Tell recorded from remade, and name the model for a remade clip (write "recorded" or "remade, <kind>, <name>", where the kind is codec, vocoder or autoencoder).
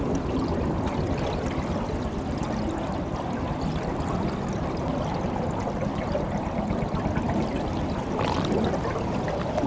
recorded